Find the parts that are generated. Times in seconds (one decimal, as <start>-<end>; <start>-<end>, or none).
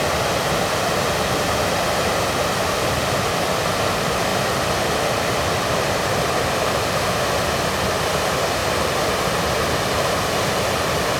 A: 8.6-10.0